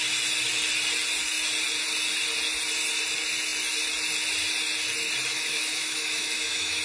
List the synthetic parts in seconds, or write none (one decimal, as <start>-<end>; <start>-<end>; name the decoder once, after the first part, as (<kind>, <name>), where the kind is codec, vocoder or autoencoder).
5.3-6.8 (autoencoder, DAC-VAE)